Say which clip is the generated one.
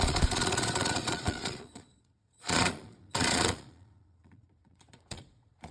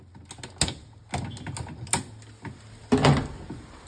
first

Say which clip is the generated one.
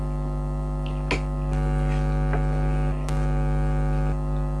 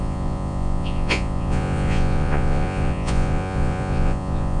second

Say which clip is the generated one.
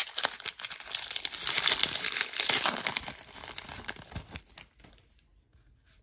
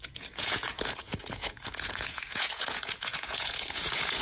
second